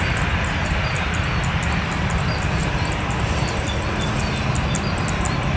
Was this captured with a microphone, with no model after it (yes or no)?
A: yes